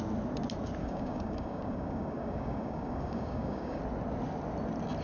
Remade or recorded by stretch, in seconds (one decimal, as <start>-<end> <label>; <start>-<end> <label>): 0.0-0.8 recorded; 0.8-3.8 remade; 3.8-5.0 recorded